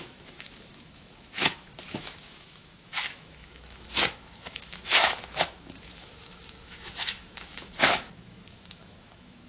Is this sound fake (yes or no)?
yes